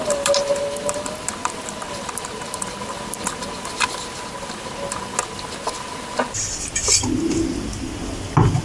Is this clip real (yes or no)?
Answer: yes